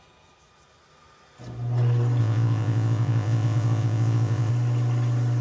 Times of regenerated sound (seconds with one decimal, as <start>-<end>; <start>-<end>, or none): 2.2-4.5

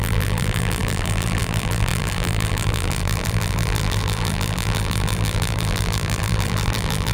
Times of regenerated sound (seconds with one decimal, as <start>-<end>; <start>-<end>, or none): 0.0-7.1

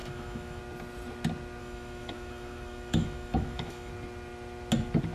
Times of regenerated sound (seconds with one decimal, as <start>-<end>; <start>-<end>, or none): 0.0-0.6; 1.6-3.9

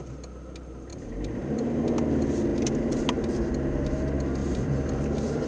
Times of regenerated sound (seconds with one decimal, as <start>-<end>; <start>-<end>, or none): 0.9-1.8; 4.4-5.0

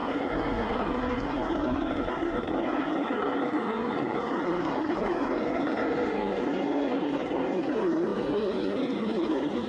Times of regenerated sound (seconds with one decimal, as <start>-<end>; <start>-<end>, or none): 0.0-9.7

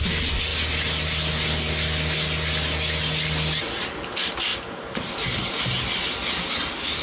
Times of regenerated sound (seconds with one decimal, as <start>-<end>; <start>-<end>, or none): none